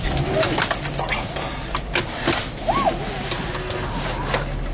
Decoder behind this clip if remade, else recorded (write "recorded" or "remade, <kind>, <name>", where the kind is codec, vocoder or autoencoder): recorded